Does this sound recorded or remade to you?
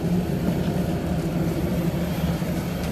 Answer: recorded